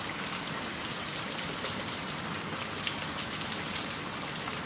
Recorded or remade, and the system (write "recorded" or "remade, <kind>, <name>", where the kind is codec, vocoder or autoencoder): recorded